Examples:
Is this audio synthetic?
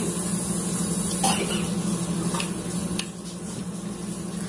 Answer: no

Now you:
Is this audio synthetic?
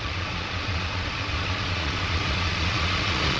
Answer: yes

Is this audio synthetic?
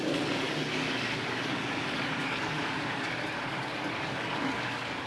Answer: yes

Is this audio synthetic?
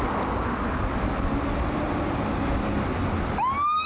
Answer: no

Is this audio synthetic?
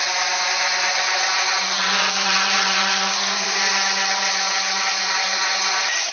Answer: yes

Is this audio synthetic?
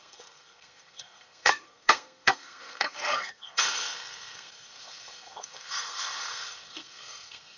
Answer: yes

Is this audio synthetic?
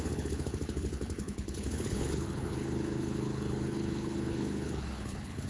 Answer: yes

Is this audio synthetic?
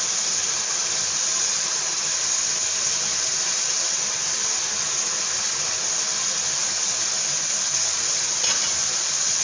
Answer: no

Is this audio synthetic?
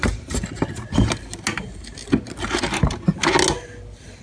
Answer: no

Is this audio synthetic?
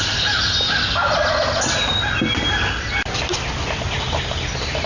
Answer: no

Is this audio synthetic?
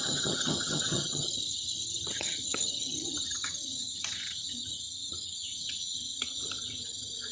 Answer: yes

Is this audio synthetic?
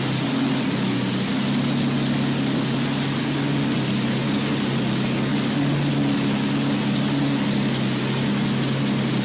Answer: no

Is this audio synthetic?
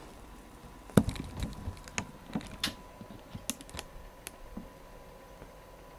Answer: no